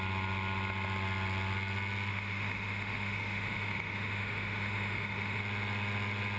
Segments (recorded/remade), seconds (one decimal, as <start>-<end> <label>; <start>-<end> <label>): 0.0-2.1 recorded; 2.1-5.4 remade; 5.4-6.4 recorded